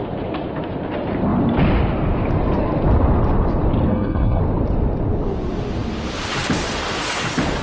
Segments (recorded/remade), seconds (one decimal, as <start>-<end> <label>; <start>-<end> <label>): 0.0-3.9 recorded; 3.9-4.4 remade; 4.4-7.6 recorded